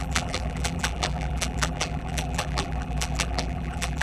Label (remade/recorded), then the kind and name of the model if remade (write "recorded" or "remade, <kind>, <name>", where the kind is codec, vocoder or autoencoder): remade, vocoder, BigVGAN v2